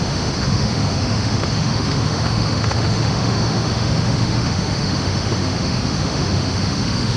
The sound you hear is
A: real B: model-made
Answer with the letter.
B